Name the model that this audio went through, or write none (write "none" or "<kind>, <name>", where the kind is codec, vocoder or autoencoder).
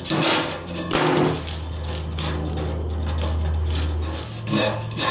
none